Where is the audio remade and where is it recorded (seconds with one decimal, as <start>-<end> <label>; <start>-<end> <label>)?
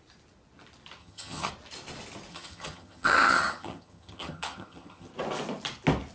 0.0-1.0 recorded; 1.0-1.5 remade; 1.5-2.3 recorded; 2.3-5.1 remade; 5.1-6.1 recorded